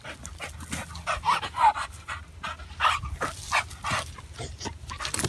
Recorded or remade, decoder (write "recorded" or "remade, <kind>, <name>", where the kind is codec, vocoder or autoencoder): recorded